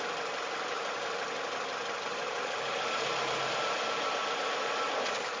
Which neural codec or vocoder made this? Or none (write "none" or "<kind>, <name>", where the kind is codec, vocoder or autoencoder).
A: none